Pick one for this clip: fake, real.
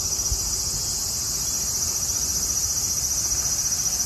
real